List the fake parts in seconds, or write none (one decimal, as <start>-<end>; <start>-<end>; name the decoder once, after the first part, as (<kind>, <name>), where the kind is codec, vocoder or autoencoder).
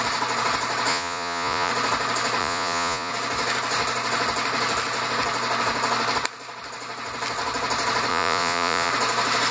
0.9-1.7 (vocoder, Vocos); 2.4-3.1; 8.1-8.9